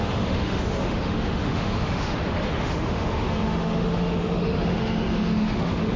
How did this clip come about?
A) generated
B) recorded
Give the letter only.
A